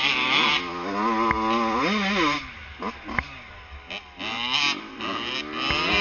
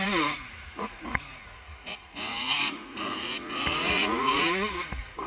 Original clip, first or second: first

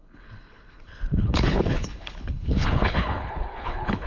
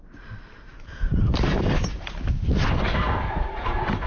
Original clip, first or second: second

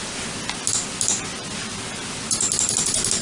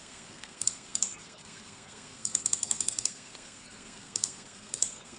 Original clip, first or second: first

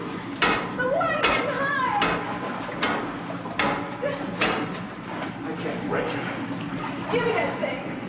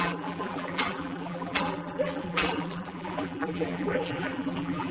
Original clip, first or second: first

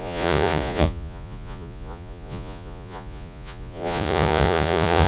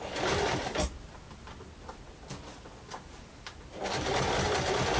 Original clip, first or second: second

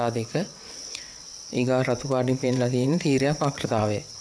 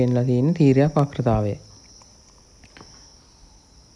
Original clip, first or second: second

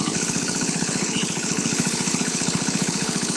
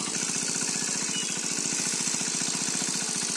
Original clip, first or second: second